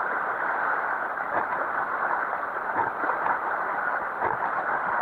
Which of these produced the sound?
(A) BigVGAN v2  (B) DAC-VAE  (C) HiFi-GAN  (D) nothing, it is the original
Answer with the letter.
D